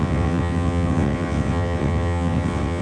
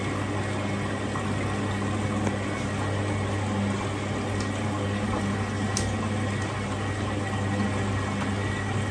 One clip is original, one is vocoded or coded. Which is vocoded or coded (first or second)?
first